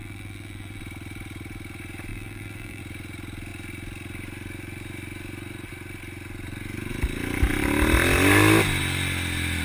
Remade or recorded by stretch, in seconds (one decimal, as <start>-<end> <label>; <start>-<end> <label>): 0.0-0.8 remade; 0.8-2.1 recorded; 2.1-2.8 remade; 2.8-9.6 recorded